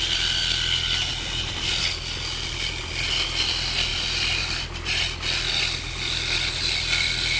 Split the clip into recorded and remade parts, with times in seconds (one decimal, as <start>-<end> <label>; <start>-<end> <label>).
0.0-7.4 recorded